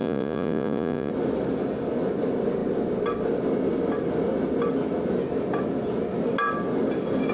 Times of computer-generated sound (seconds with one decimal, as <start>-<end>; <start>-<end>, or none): 0.0-1.1